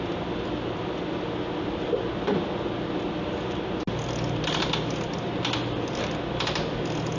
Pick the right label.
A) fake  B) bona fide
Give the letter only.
B